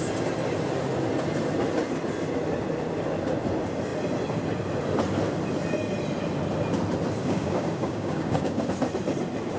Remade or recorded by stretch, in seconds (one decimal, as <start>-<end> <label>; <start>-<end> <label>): 0.0-7.2 recorded; 7.2-8.6 remade; 8.6-9.6 recorded